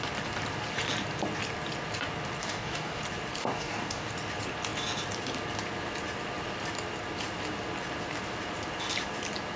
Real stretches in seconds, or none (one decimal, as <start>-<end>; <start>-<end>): 0.0-2.4; 3.0-3.4; 4.1-9.6